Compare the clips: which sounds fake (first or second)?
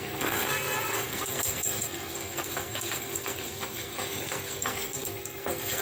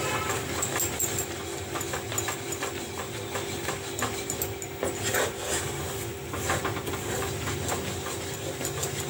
first